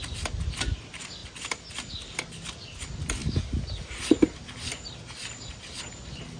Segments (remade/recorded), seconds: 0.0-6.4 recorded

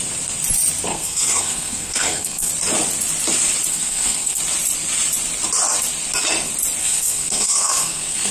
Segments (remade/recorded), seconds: 0.0-0.9 recorded; 0.9-2.5 remade; 2.5-3.7 recorded; 3.7-4.4 remade; 4.4-6.8 recorded; 6.8-8.3 remade

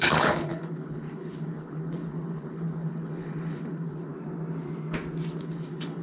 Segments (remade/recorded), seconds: 0.0-4.1 remade; 4.1-5.4 recorded; 5.4-6.0 remade

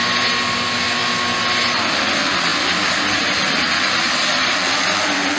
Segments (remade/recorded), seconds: 0.0-5.4 recorded

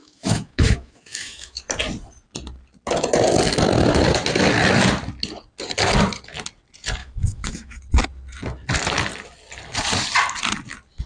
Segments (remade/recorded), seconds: 0.0-1.6 remade; 1.6-7.0 recorded; 7.0-7.8 remade; 7.8-11.1 recorded

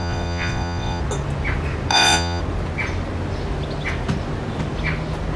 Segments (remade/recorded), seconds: 0.0-1.0 remade; 1.0-1.9 recorded; 1.9-2.4 remade; 2.4-5.4 recorded